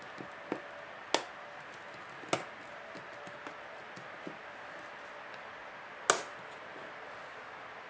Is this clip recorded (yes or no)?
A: yes